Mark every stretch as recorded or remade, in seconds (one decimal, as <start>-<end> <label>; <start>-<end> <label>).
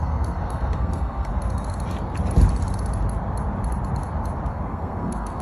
0.0-1.3 remade; 1.3-4.5 recorded; 4.5-5.4 remade